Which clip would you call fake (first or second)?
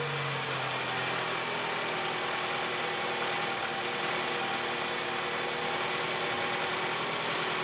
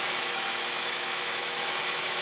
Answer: second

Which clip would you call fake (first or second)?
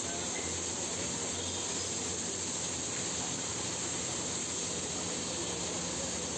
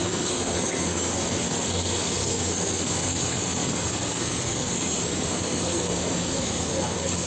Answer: second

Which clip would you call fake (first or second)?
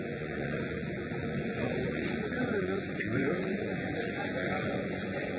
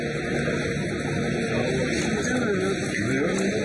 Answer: first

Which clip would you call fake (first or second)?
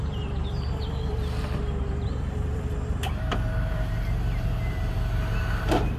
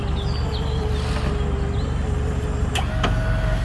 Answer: first